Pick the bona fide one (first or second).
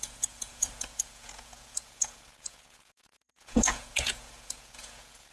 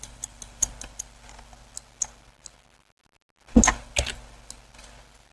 second